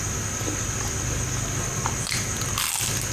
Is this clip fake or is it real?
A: real